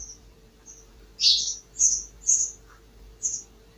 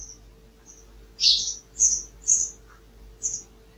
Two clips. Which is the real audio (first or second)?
second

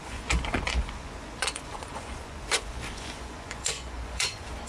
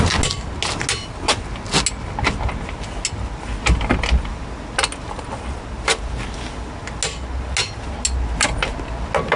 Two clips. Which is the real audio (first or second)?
second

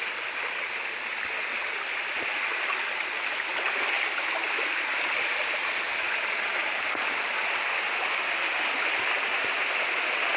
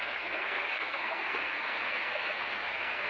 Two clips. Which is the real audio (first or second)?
first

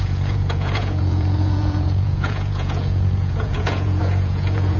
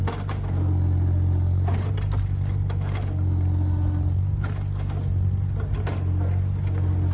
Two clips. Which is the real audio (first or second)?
second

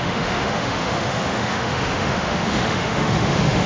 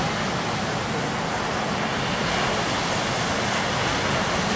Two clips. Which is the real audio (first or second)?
second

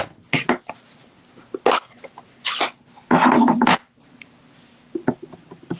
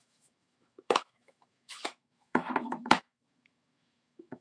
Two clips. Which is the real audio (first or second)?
first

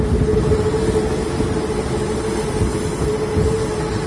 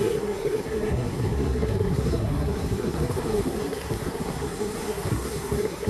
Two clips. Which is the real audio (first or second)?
first